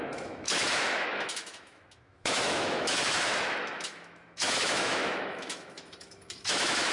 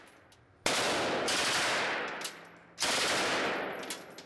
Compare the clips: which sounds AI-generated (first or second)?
first